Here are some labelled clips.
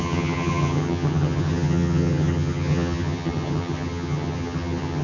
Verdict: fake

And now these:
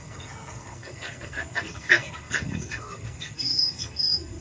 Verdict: fake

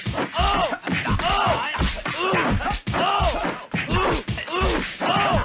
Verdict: real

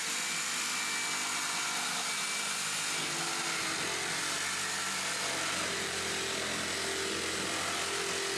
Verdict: real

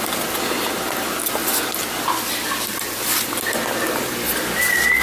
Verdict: real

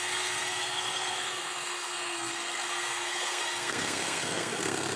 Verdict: fake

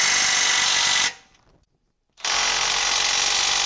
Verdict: real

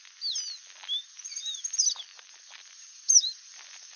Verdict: real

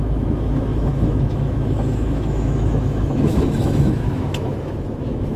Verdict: fake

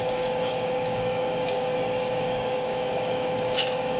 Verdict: fake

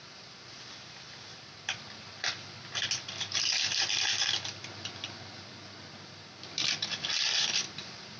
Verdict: real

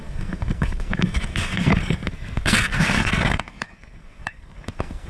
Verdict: fake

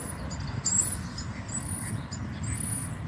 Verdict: fake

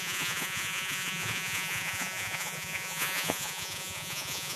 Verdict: fake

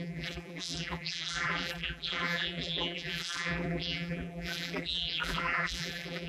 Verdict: fake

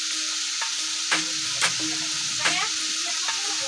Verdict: real